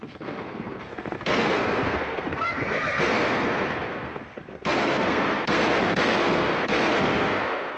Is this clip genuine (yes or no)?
no